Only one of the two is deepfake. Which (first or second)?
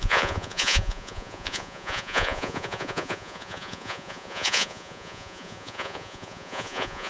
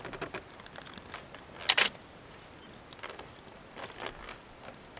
first